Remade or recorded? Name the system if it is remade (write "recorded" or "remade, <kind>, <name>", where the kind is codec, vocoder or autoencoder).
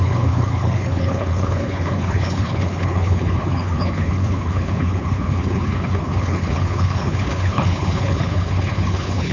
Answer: remade, codec, HILCodec